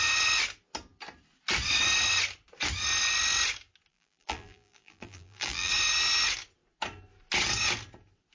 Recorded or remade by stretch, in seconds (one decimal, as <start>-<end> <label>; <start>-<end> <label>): 0.0-3.9 recorded; 3.9-5.7 remade; 5.7-8.3 recorded